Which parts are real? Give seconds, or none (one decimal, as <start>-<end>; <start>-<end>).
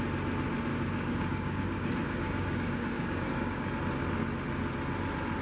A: 0.0-0.7; 3.7-5.4